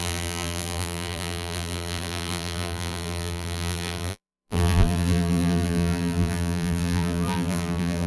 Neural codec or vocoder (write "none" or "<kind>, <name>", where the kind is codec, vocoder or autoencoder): vocoder, BigVGAN v2